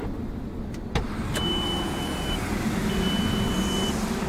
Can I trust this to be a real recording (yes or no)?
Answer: no